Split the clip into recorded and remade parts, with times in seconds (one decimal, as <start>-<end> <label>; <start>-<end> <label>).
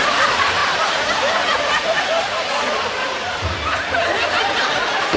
0.0-5.2 recorded